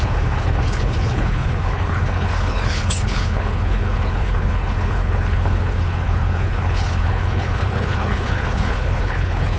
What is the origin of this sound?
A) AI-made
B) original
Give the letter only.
A